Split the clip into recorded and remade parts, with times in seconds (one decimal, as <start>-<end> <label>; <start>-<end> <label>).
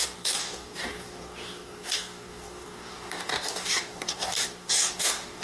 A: 0.0-5.4 remade